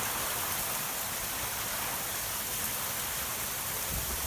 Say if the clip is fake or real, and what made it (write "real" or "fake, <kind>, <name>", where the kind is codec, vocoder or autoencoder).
real